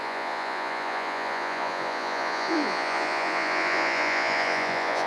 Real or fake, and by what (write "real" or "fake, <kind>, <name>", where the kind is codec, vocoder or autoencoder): fake, vocoder, Vocos